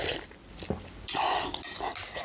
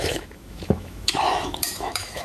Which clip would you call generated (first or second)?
second